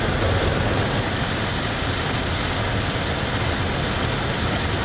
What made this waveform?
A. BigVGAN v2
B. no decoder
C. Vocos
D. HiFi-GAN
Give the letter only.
B